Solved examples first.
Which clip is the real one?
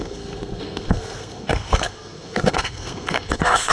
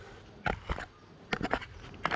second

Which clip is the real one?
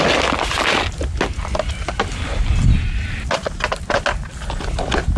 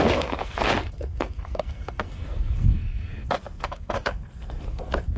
first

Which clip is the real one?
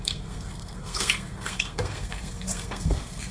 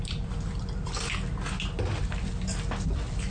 second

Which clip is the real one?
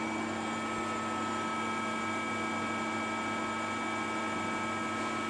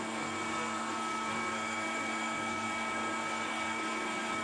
first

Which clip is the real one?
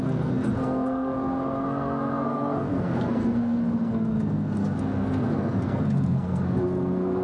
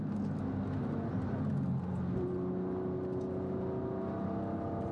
second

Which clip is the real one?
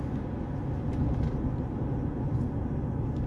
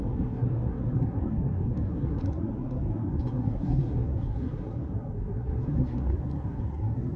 first